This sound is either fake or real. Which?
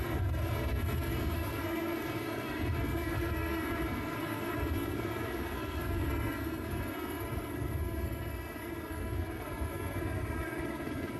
fake